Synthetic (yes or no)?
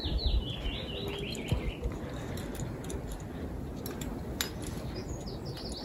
no